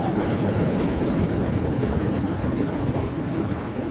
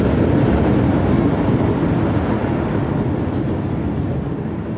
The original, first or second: second